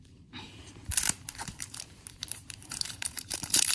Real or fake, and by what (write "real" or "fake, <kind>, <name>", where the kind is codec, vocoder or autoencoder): fake, vocoder, BigVGAN v2